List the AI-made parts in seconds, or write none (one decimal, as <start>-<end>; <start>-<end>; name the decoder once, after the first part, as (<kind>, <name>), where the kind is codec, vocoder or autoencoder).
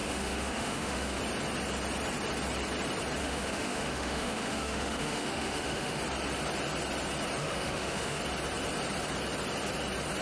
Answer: 0.0-1.2 (autoencoder, DAC-VAE); 3.2-6.0; 7.4-8.2